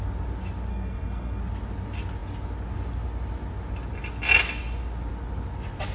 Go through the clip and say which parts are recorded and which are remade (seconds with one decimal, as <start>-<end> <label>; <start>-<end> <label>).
0.0-0.7 recorded; 0.7-1.4 remade; 1.4-5.9 recorded